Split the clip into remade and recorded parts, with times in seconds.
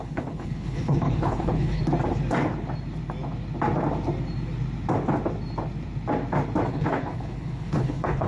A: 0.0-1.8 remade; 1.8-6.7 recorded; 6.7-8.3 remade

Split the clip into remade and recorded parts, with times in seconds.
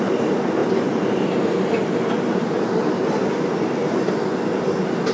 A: 0.0-5.1 recorded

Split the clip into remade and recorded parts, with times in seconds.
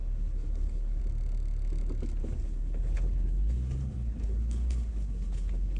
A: 0.0-1.0 remade; 1.0-2.2 recorded; 2.2-5.8 remade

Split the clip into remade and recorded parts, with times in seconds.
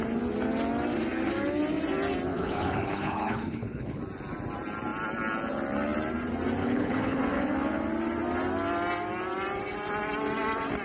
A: 0.0-2.3 recorded; 2.3-4.0 remade; 4.0-6.6 recorded; 6.6-7.2 remade; 7.2-10.8 recorded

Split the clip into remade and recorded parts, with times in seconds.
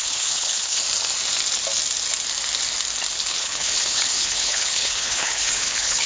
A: 0.0-0.8 remade; 0.8-3.3 recorded; 3.3-6.1 remade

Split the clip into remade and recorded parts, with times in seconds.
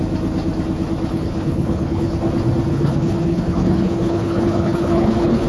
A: 0.0-1.1 recorded; 1.1-2.2 remade; 2.2-2.7 recorded; 2.7-5.5 remade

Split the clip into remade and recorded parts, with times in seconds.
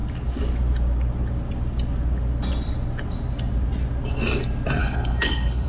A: 0.0-4.8 recorded; 4.8-5.7 remade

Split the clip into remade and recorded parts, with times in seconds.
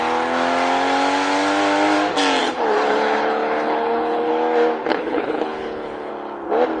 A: 0.0-2.4 recorded; 2.4-4.3 remade; 4.3-4.9 recorded; 4.9-6.1 remade; 6.1-6.8 recorded